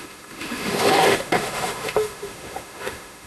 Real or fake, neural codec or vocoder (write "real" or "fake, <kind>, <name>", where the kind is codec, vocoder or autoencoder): fake, autoencoder, DAC-VAE